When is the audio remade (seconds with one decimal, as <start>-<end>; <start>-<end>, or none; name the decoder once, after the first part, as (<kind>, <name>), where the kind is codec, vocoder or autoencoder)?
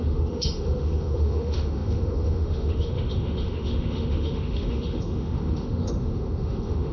0.0-6.9 (autoencoder, DAC-VAE)